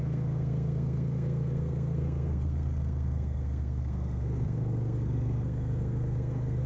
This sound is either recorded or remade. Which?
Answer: remade